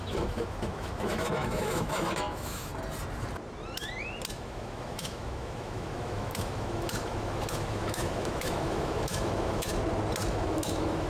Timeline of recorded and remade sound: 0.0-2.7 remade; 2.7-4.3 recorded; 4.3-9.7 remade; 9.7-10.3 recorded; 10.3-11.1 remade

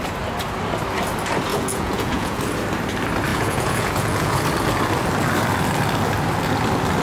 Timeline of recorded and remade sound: 0.0-1.5 recorded; 1.5-2.4 remade; 2.4-3.3 recorded; 3.3-4.4 remade; 4.4-7.0 recorded

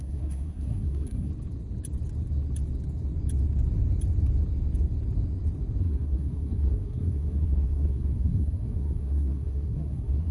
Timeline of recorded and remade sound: 0.0-1.3 remade; 1.3-5.8 recorded; 5.8-10.3 remade

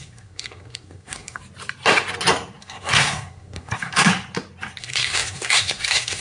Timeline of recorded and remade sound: 0.0-1.4 remade; 1.4-2.6 recorded; 2.6-4.1 remade; 4.1-4.8 recorded; 4.8-6.2 remade